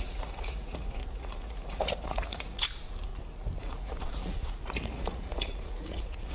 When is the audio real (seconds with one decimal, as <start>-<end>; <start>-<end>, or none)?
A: 3.1-3.6